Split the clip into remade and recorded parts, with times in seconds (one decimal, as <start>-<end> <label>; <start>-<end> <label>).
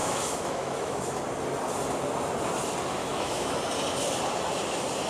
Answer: 0.0-1.2 remade; 1.2-3.0 recorded; 3.0-3.6 remade; 3.6-5.1 recorded